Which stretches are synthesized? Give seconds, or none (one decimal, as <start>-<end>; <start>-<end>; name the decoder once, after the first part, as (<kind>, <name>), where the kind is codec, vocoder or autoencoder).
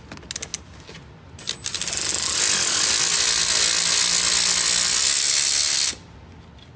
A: none